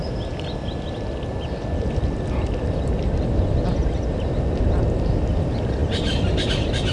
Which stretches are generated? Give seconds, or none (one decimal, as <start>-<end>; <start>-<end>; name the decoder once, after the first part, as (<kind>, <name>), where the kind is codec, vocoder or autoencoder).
none